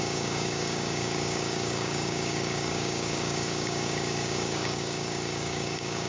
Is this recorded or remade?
remade